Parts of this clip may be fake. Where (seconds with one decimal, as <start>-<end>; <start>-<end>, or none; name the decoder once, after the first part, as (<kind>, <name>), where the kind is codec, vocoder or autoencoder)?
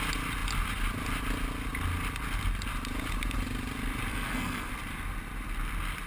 4.1-4.7 (codec, SNAC)